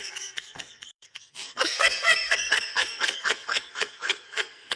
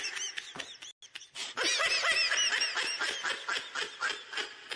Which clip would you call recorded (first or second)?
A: second